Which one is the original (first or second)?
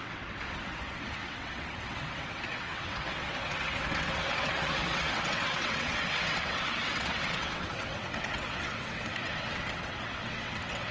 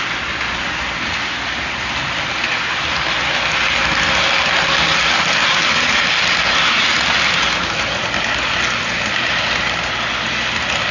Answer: second